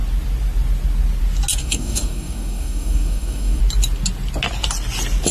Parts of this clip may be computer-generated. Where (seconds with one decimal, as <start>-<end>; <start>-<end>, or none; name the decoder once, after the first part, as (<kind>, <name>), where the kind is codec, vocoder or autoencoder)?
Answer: 1.6-3.6 (codec, DAC)